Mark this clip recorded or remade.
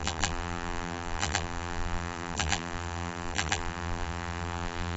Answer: remade